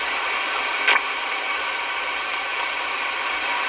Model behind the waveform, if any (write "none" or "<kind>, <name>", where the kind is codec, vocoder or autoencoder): none